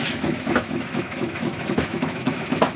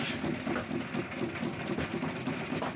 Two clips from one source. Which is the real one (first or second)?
second